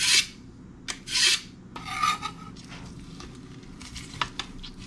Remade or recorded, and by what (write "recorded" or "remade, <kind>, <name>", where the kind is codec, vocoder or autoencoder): recorded